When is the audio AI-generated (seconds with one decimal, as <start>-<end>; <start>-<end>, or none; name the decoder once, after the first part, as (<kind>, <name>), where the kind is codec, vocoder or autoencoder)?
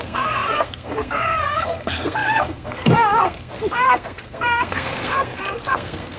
0.0-6.2 (codec, SNAC)